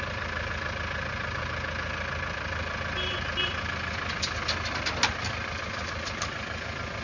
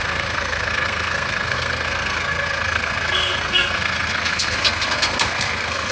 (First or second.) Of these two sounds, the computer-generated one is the second